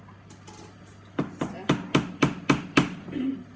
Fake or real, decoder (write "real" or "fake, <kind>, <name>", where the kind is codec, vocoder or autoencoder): real